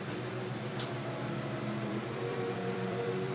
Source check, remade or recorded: remade